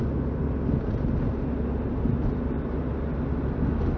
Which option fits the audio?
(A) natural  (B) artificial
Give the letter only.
A